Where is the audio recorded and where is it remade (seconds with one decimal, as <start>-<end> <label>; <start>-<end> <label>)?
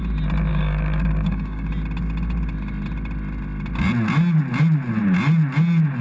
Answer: 0.0-0.5 recorded; 0.5-1.7 remade; 1.7-6.0 recorded